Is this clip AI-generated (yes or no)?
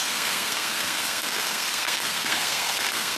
yes